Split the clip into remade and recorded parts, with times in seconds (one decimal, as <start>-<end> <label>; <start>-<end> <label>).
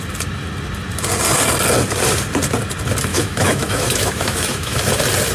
0.0-3.1 recorded; 3.1-4.8 remade; 4.8-5.3 recorded